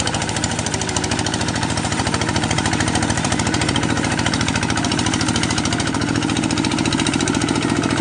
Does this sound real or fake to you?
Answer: fake